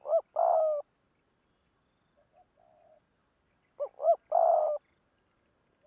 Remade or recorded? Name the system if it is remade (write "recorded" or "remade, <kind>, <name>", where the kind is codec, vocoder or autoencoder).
recorded